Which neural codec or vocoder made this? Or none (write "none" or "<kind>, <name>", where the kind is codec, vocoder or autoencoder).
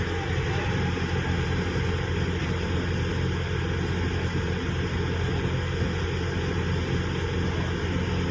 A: none